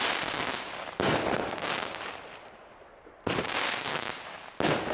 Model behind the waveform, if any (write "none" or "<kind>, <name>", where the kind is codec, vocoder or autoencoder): none